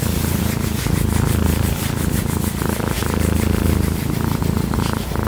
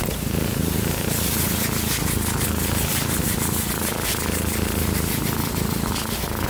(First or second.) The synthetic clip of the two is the first